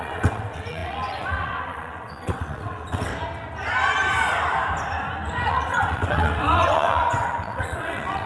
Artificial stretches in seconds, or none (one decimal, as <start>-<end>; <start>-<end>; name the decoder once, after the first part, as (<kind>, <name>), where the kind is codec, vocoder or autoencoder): 0.0-3.1 (vocoder, WaveNeXt); 5.5-8.3